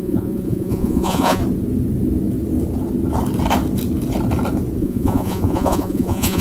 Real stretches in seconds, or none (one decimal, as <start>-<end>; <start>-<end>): 1.4-4.8